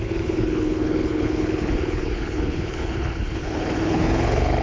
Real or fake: fake